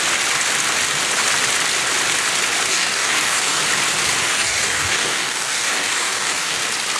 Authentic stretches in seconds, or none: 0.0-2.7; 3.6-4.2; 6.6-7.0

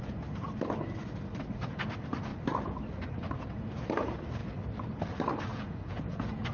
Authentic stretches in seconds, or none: 0.0-5.5

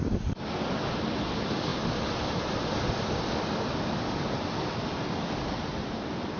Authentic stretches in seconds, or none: 0.0-6.4